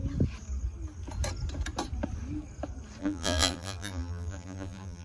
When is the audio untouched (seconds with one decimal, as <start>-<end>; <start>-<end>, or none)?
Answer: 0.0-3.0